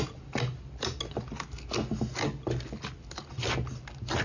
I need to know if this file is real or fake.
real